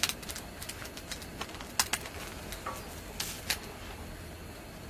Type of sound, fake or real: real